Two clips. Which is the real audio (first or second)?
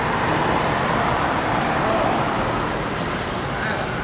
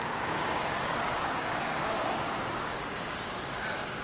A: first